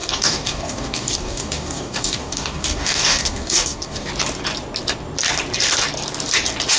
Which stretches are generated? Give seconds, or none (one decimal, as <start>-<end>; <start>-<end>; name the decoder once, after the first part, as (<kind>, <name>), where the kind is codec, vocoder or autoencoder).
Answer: 0.0-4.1 (codec, DAC)